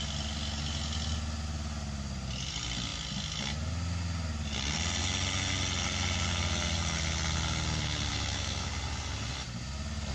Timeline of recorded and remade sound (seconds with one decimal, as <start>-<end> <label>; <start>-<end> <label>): 0.0-8.1 recorded; 8.1-8.7 remade; 8.7-10.1 recorded